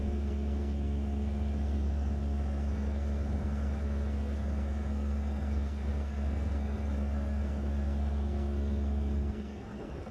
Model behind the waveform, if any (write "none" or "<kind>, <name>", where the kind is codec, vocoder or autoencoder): codec, SNAC